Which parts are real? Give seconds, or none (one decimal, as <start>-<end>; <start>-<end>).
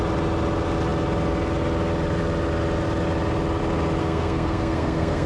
0.0-4.0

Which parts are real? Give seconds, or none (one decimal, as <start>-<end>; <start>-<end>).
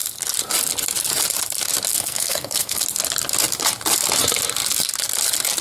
0.0-1.9; 2.8-5.6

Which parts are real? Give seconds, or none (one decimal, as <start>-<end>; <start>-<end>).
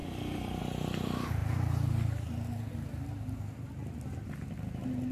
0.0-5.1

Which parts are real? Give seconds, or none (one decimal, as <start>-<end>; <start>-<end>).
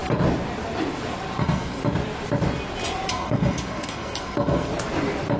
0.0-1.4; 1.8-3.1; 4.7-5.4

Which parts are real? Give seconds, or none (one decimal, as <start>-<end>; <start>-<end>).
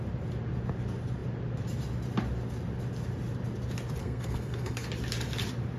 0.0-4.0; 4.9-5.8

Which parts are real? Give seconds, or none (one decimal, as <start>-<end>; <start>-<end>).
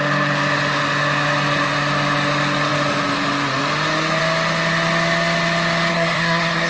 0.0-5.9